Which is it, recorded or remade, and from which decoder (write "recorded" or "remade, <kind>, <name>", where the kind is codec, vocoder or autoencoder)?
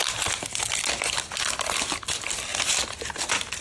recorded